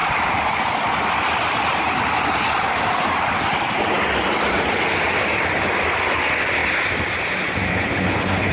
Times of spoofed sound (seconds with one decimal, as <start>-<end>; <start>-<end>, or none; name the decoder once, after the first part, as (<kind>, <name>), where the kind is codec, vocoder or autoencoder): 7.7-8.5 (codec, HILCodec)